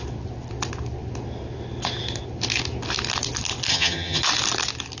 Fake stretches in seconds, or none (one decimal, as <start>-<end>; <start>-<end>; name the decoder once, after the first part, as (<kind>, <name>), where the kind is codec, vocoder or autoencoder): 3.7-4.2 (vocoder, HiFi-GAN)

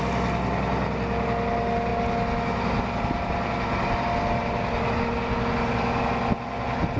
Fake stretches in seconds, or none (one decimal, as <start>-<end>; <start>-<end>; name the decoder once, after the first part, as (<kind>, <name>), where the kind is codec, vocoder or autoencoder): none

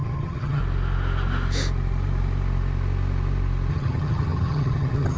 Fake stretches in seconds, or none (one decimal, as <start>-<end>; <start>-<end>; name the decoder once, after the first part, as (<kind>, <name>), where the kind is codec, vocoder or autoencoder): 0.0-0.6 (vocoder, HiFi-GAN); 3.7-5.2

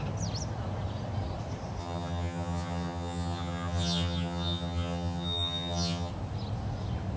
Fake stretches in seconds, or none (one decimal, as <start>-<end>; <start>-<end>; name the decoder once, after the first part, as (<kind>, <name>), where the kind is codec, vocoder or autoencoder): 1.8-6.1 (vocoder, HiFi-GAN)